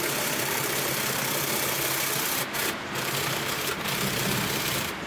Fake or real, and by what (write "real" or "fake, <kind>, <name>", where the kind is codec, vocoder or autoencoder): fake, vocoder, BigVGAN v2